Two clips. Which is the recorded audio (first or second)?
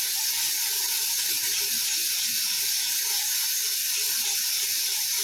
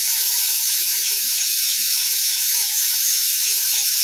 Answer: first